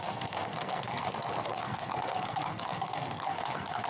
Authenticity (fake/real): fake